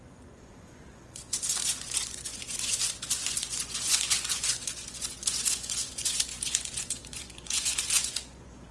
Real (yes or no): no